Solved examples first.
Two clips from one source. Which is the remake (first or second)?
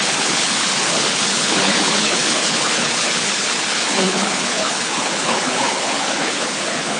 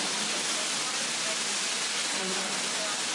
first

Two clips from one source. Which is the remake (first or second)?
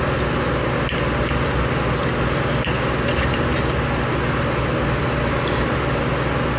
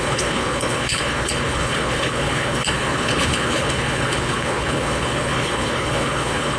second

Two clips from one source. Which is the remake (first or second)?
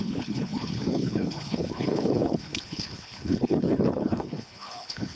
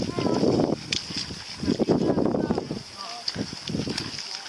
first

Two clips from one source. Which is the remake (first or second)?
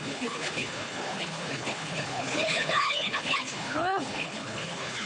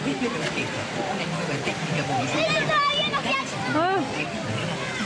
first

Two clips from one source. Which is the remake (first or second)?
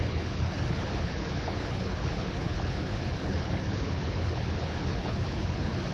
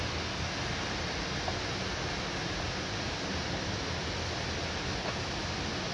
first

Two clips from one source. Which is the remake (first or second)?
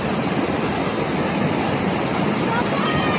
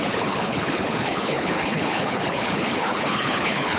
second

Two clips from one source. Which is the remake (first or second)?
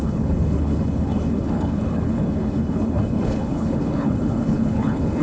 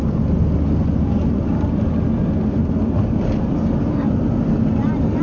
first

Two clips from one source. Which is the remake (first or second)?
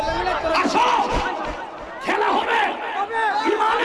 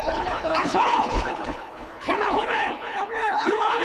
second